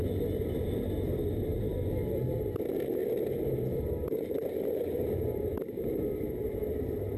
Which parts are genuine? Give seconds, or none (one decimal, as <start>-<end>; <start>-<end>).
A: 0.0-0.6; 3.0-3.7